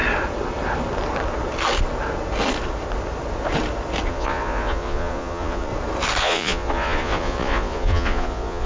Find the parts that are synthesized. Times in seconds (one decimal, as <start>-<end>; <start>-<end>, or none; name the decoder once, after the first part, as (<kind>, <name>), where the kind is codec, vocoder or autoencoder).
4.1-5.7 (vocoder, Vocos); 6.2-8.7